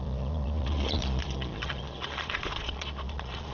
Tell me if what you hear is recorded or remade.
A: remade